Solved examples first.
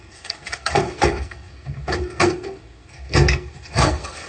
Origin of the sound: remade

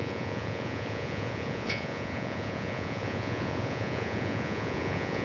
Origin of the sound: remade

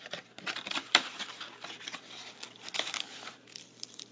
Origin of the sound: remade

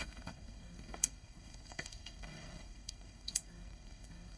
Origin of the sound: remade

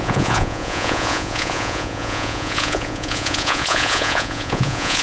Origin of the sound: remade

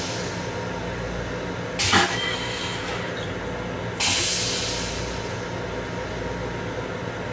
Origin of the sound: recorded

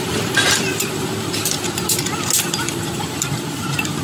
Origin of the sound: remade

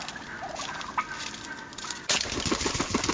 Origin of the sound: recorded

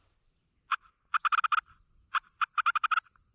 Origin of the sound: recorded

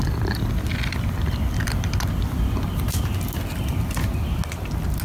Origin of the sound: recorded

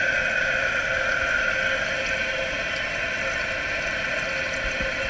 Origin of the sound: recorded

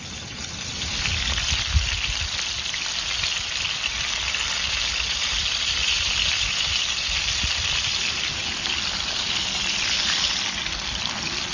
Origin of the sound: recorded